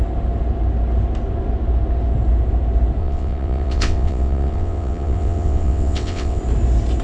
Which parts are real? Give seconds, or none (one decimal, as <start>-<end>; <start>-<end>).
0.0-3.0; 6.4-7.0